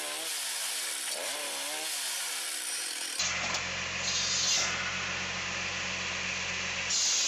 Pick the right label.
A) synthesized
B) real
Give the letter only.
B